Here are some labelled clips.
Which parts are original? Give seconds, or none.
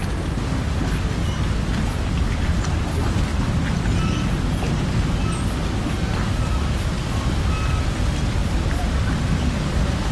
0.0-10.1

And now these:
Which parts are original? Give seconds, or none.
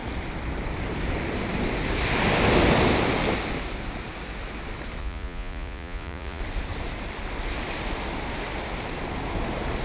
0.0-5.0; 6.4-9.8